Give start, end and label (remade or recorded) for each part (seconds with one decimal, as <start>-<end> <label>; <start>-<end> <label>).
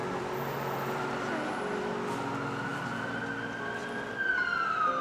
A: 0.0-1.5 remade; 1.5-2.7 recorded; 2.7-3.2 remade; 3.2-3.8 recorded; 3.8-4.3 remade; 4.3-5.0 recorded